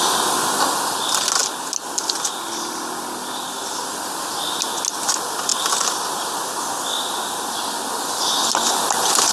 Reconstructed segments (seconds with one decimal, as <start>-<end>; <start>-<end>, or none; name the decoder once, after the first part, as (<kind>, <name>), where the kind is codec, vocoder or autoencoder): none